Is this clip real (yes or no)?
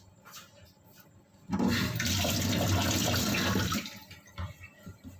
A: yes